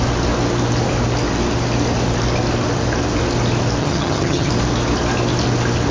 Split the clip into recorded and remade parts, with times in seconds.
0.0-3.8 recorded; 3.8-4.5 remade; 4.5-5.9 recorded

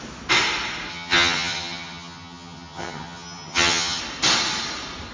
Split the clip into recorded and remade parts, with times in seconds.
0.0-0.9 recorded; 0.9-4.0 remade; 4.0-5.1 recorded